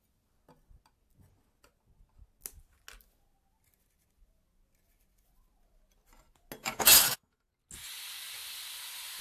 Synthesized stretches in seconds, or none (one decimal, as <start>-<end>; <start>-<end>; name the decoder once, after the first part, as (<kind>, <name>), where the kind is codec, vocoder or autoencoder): 6.6-7.5 (autoencoder, DAC-VAE)